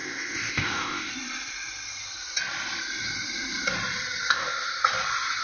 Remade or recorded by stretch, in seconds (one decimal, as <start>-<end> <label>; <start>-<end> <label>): 0.0-1.1 remade; 1.1-4.3 recorded; 4.3-4.8 remade; 4.8-5.4 recorded